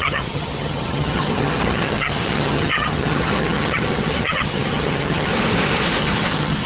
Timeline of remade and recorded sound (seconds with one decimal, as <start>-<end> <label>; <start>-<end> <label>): 0.0-5.3 remade; 5.3-6.0 recorded; 6.0-6.7 remade